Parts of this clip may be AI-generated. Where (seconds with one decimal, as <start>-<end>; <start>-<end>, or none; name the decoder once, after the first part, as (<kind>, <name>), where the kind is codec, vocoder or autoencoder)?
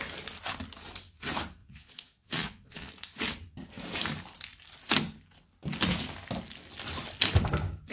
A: 1.6-2.9 (vocoder, Vocos)